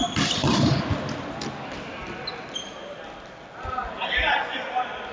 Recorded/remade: recorded